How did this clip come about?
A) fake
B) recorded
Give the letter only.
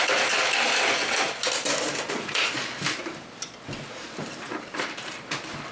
B